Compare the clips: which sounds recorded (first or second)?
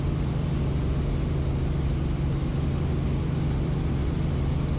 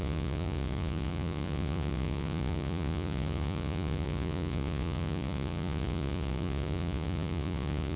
first